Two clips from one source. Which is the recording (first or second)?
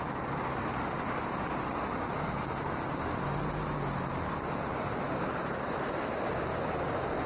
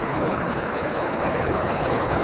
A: first